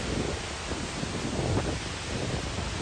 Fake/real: real